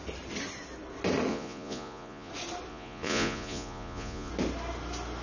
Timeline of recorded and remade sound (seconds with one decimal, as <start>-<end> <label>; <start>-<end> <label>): 0.0-1.3 recorded; 1.3-2.3 remade; 2.3-2.7 recorded; 2.7-4.3 remade; 4.3-5.2 recorded